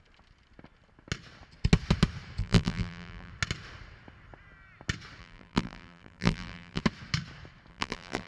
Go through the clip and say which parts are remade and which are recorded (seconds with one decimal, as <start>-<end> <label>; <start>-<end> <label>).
0.0-2.4 recorded; 2.4-3.3 remade; 3.3-5.2 recorded; 5.2-6.8 remade; 6.8-7.7 recorded; 7.7-8.3 remade